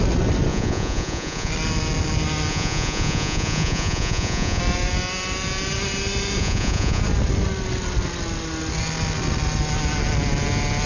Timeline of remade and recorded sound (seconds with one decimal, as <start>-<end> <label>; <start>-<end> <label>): 0.0-0.5 recorded; 0.5-1.5 remade; 1.5-2.5 recorded; 2.5-4.6 remade; 4.6-6.4 recorded; 6.4-7.0 remade; 7.0-10.9 recorded